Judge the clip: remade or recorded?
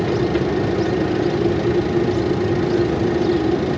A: recorded